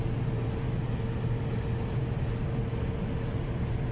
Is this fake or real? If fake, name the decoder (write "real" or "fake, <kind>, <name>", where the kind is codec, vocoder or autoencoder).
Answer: real